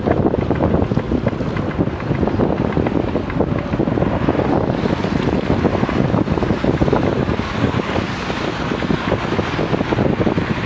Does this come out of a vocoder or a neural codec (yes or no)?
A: no